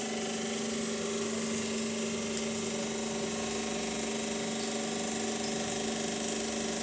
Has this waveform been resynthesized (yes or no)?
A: no